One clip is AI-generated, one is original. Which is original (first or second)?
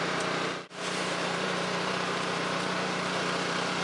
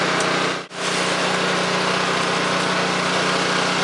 second